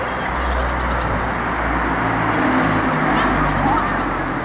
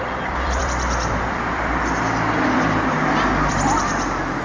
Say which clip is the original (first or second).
first